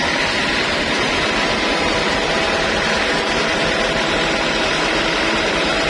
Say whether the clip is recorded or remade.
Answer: recorded